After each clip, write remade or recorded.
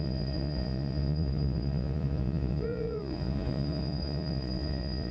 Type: remade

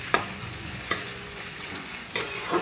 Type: remade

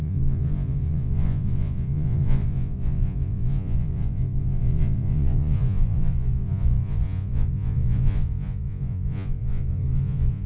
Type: remade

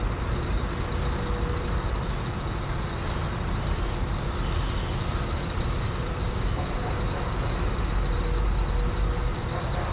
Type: recorded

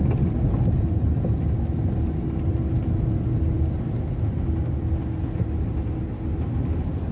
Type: recorded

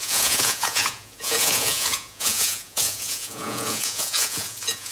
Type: remade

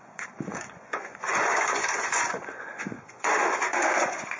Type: remade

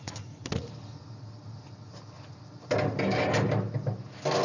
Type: recorded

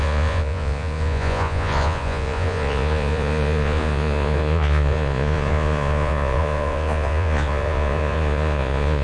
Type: remade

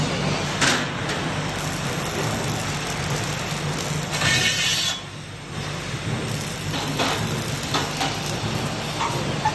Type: recorded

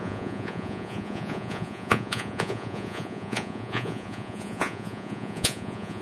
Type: remade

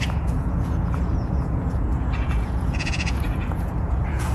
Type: remade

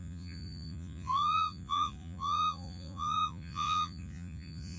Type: remade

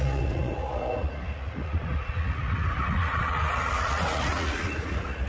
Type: remade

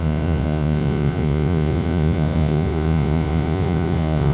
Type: remade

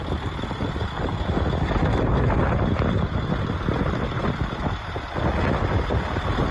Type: recorded